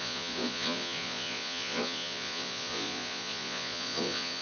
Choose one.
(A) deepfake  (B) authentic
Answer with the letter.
A